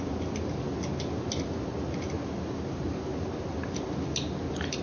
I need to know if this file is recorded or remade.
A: recorded